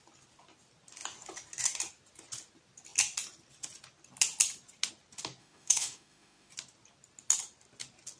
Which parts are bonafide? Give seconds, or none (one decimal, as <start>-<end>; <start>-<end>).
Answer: 0.0-5.4; 6.5-8.2